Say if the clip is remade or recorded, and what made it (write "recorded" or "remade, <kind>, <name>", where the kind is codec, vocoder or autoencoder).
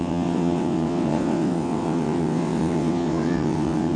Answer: remade, vocoder, WaveNeXt